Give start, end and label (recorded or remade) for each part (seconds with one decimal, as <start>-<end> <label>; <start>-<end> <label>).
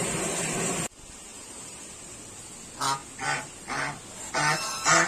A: 0.0-1.3 recorded; 1.3-1.8 remade; 1.8-5.1 recorded